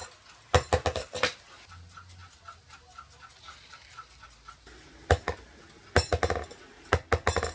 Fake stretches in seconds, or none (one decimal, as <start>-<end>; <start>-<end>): none